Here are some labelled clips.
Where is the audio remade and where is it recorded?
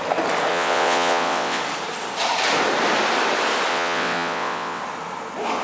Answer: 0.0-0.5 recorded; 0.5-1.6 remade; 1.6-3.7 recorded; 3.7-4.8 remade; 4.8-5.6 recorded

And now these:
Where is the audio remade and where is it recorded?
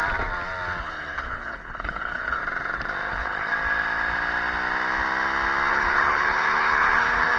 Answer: 0.0-0.8 recorded; 0.8-2.4 remade; 2.4-3.1 recorded; 3.1-3.5 remade; 3.5-5.7 recorded; 5.7-7.4 remade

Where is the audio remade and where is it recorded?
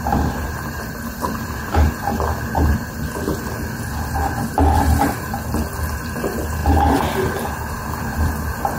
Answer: 0.0-8.8 recorded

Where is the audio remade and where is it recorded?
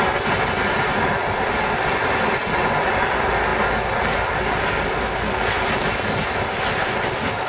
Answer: 0.0-7.5 recorded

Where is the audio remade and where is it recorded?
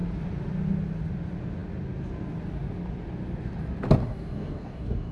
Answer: 0.0-4.0 recorded; 4.0-5.1 remade